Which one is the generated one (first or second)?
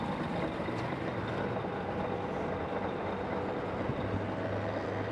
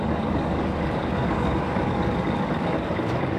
second